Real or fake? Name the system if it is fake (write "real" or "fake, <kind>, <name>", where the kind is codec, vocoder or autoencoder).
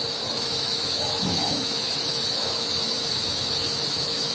fake, autoencoder, DAC-VAE